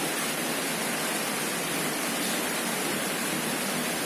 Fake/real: real